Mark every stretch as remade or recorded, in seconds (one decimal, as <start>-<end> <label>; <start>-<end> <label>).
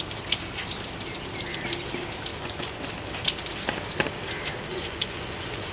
0.0-2.3 recorded; 2.3-2.8 remade; 2.8-4.7 recorded; 4.7-5.7 remade